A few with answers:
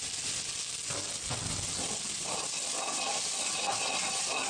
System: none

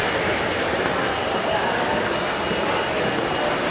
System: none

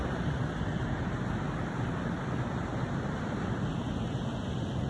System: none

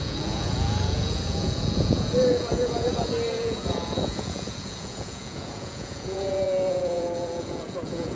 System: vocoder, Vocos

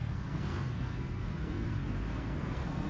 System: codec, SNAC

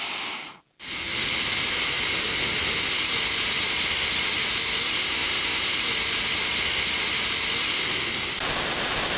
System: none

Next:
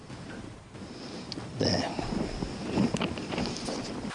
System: none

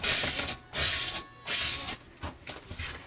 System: none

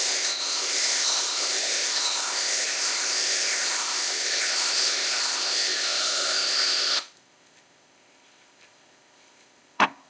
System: codec, ZipCodec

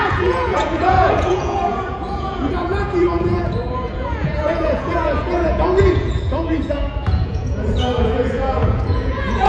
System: vocoder, Vocos